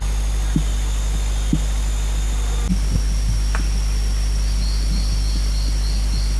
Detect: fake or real real